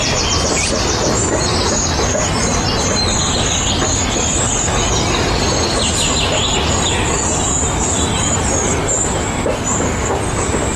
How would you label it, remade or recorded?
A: recorded